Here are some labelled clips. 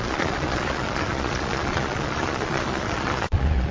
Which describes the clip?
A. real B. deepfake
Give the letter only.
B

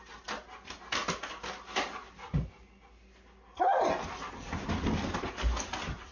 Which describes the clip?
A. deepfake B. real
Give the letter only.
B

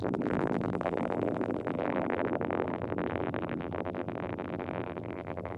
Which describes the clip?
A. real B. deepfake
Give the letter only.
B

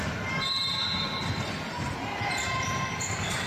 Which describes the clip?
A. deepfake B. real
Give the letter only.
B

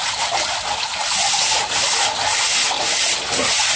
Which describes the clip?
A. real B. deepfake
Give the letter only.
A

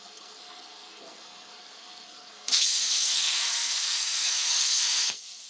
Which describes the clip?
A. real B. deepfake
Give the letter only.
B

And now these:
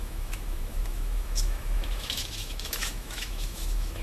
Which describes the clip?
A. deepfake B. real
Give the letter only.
A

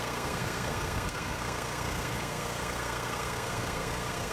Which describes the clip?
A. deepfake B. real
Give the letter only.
A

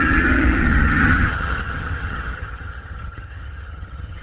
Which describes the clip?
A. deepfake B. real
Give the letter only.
A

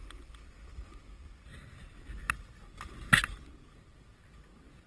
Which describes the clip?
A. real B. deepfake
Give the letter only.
A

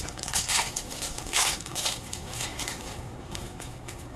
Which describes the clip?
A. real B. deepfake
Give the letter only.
B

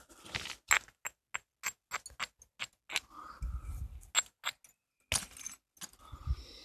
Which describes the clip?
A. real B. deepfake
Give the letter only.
A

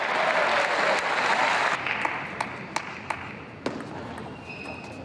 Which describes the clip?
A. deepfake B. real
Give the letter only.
B